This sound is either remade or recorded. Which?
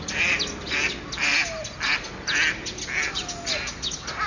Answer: recorded